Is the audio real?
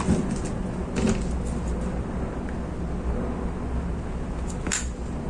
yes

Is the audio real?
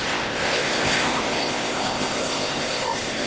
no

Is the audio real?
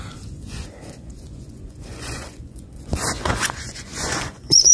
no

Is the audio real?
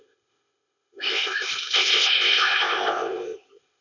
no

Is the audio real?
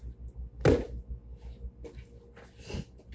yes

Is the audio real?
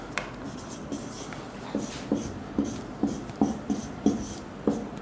yes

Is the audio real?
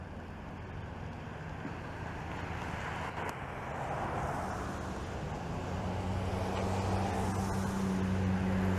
yes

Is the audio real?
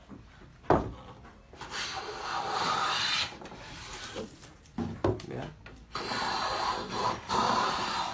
no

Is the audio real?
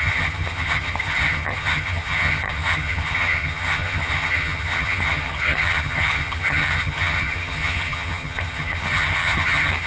no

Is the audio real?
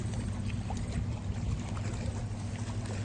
yes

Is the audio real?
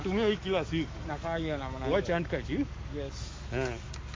no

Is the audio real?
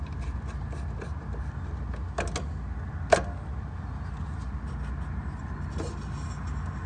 yes